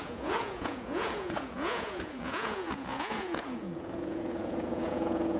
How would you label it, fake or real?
fake